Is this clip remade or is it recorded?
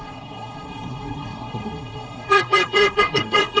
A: remade